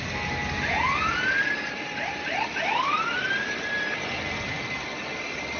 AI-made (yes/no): no